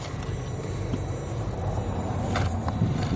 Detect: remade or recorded recorded